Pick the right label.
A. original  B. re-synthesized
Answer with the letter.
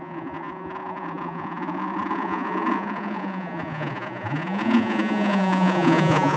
B